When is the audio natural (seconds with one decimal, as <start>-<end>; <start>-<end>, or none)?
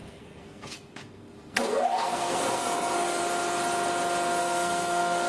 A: 3.2-4.4